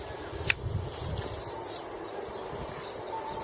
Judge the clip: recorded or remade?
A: recorded